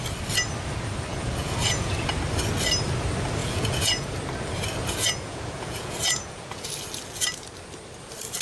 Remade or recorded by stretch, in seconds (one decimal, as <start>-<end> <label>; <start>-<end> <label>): 0.0-1.1 recorded; 1.1-2.1 remade; 2.1-3.4 recorded; 3.4-4.2 remade; 4.2-4.8 recorded; 4.8-6.7 remade; 6.7-8.4 recorded

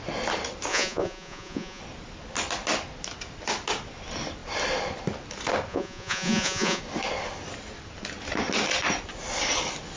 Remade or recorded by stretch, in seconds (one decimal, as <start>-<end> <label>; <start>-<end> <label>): 0.0-0.7 recorded; 0.7-1.8 remade; 1.8-5.7 recorded; 5.7-6.8 remade; 6.8-10.0 recorded

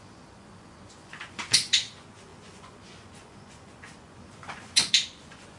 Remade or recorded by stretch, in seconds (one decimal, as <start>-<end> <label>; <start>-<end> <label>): 0.0-5.6 remade